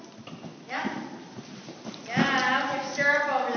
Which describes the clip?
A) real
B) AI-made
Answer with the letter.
A